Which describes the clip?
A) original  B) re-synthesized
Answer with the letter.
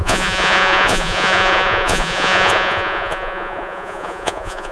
B